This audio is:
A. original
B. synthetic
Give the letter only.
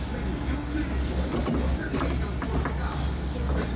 A